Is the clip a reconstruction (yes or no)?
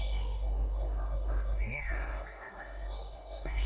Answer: yes